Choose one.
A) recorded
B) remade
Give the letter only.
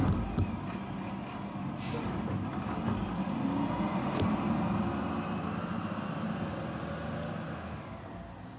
A